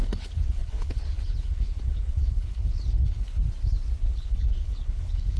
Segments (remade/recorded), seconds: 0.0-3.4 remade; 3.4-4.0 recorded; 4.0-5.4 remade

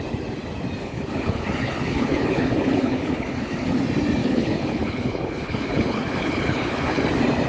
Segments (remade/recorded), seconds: 0.0-0.8 recorded; 0.8-3.8 remade; 3.8-4.2 recorded; 4.2-7.0 remade; 7.0-7.5 recorded